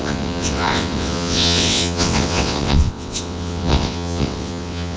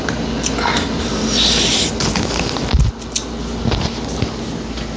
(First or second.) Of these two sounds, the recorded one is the second